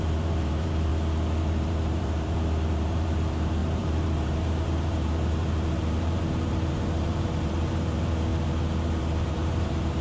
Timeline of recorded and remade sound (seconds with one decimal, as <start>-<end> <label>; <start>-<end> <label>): 0.0-0.9 remade; 0.9-1.4 recorded; 1.4-8.3 remade; 8.3-9.0 recorded; 9.0-10.0 remade